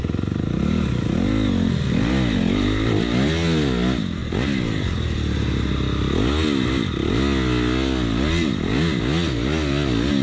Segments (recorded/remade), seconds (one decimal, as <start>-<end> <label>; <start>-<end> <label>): 0.0-10.2 recorded